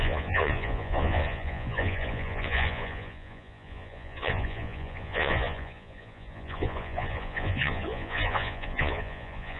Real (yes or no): no